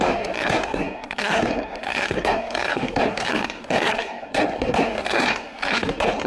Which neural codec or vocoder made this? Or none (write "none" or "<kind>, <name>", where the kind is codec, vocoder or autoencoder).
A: codec, SNAC